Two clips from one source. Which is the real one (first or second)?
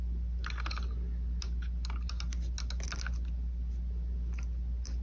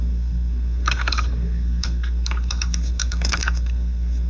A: first